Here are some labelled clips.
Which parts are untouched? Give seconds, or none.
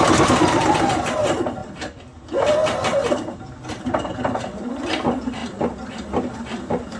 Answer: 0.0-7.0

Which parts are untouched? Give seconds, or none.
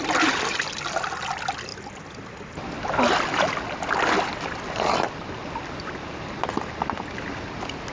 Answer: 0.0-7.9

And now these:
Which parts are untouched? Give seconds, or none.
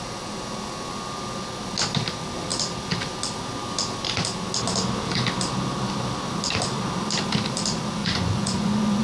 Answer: 0.0-8.0